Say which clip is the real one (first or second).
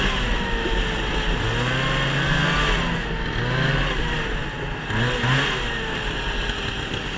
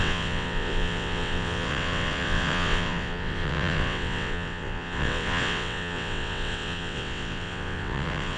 first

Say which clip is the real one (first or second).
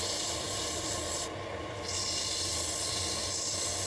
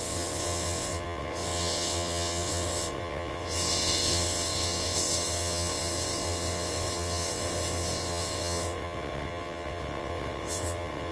first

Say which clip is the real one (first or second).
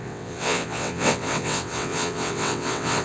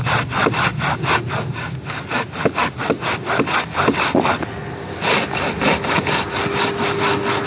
second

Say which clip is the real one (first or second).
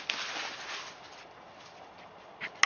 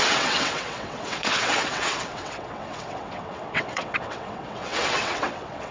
first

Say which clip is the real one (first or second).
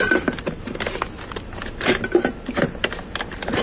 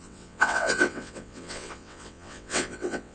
first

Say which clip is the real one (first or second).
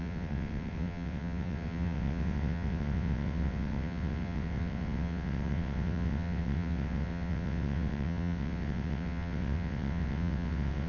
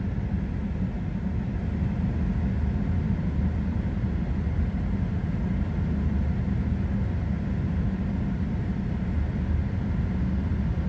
second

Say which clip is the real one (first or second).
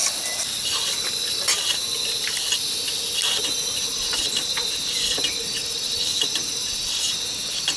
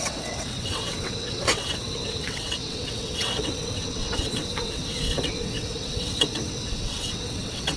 first